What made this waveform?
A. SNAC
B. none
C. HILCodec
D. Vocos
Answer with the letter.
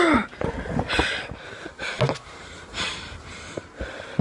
B